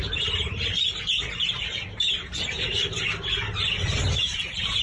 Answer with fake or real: real